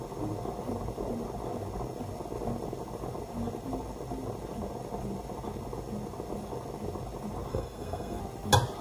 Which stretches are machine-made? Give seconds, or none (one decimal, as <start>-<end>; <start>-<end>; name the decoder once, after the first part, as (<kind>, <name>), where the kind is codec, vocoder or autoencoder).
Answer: 7.5-8.2 (codec, SNAC)